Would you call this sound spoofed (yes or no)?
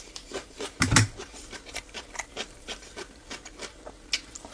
yes